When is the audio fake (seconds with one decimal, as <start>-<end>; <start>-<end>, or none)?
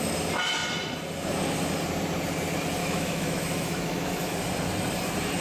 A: 2.8-4.4